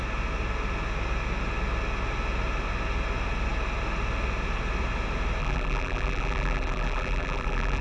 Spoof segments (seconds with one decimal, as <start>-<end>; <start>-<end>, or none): 5.4-7.8